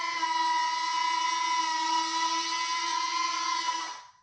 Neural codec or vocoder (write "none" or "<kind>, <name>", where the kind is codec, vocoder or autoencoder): none